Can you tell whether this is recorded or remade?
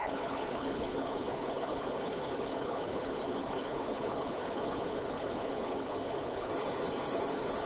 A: remade